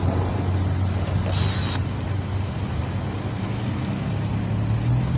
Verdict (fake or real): real